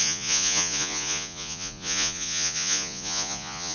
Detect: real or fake fake